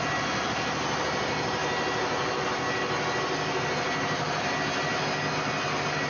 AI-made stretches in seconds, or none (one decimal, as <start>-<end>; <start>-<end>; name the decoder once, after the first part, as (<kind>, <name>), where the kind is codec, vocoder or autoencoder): none